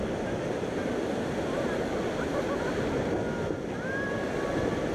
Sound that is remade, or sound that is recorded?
recorded